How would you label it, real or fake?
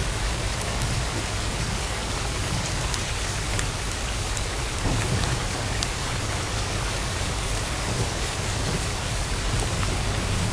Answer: fake